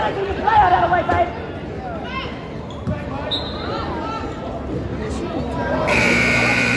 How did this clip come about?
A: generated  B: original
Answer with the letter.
B